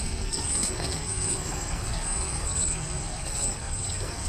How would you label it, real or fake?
fake